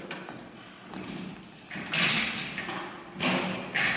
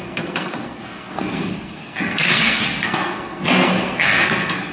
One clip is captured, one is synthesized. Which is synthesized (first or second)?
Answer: second